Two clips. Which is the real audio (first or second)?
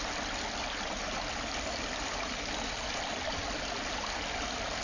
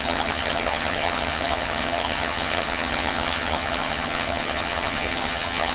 first